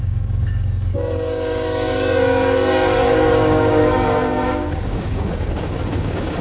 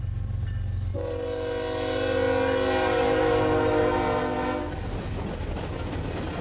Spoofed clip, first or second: first